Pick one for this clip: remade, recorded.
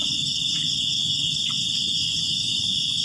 remade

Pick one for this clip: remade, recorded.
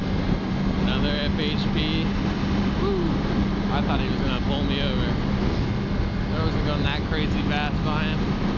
recorded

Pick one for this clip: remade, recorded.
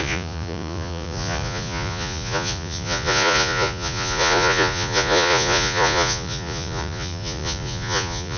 remade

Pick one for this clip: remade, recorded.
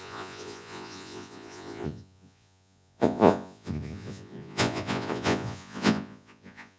remade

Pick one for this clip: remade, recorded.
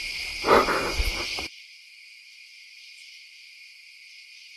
recorded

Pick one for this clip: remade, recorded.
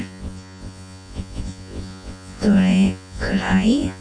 remade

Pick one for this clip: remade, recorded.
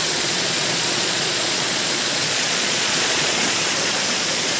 remade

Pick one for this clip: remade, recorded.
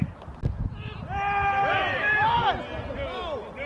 recorded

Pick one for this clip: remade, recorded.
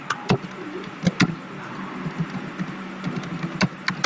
recorded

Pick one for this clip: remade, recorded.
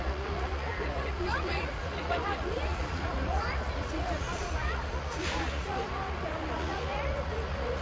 remade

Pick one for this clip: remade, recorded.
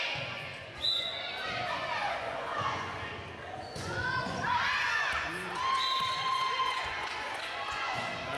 remade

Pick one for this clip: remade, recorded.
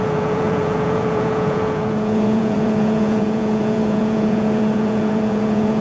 remade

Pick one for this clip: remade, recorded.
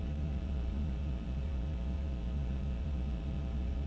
remade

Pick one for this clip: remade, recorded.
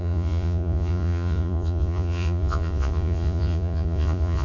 remade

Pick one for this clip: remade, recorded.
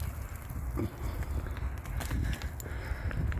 recorded